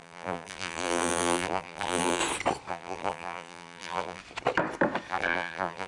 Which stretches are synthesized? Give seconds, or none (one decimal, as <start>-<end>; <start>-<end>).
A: 0.0-2.2; 2.7-4.2; 5.1-5.9